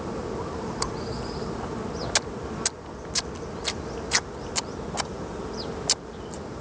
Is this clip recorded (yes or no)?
yes